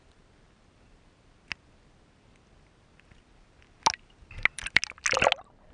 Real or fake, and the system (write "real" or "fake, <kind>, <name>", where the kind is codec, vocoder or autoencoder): real